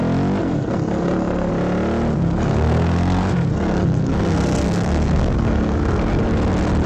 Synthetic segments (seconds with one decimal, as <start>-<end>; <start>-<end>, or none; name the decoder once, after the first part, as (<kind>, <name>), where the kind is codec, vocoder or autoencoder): 0.4-1.5 (codec, SNAC); 2.1-6.2